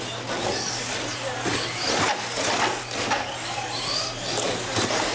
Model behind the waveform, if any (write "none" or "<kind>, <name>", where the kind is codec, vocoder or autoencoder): none